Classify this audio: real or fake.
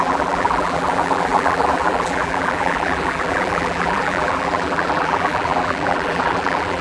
fake